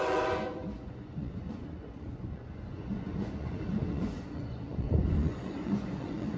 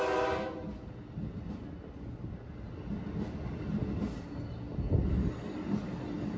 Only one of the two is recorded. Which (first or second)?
second